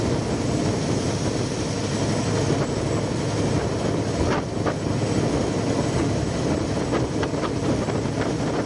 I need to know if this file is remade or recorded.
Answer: recorded